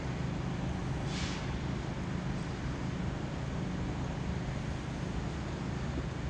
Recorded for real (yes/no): yes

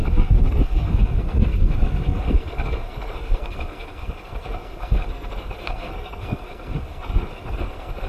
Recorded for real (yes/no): no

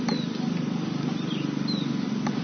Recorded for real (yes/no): yes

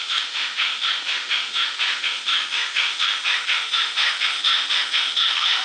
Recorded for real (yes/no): no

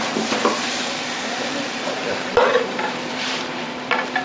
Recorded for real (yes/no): no